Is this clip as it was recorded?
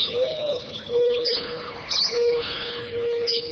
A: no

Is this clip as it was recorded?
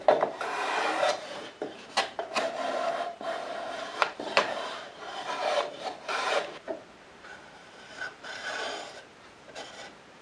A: no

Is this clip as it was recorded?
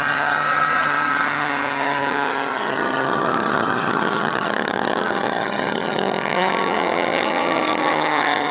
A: no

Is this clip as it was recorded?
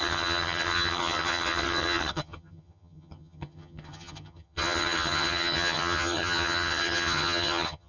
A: no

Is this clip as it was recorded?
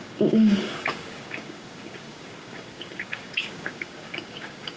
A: no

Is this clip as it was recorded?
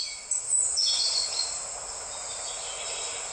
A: yes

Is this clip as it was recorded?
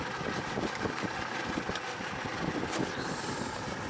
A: yes